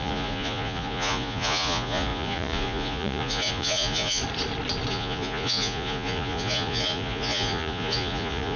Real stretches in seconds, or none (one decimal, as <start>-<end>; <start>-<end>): 4.2-4.9